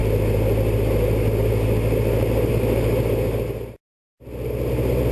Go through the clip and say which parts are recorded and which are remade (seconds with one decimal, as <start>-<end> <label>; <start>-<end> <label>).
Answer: 0.0-5.1 recorded